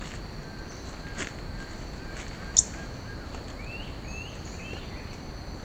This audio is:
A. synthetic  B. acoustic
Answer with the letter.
B